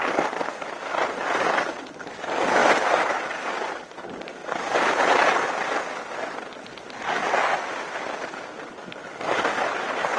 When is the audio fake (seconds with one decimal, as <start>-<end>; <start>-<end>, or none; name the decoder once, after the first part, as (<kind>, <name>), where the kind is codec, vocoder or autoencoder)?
2.6-3.2 (vocoder, BigVGAN v2); 4.4-5.3